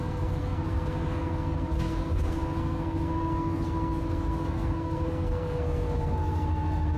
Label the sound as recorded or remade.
remade